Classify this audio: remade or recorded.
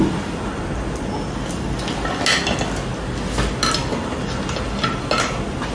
recorded